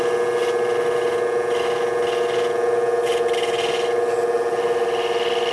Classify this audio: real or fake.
real